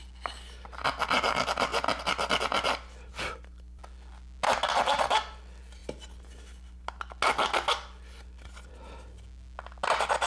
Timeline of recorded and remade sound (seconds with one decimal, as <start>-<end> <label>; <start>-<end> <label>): 0.0-10.3 recorded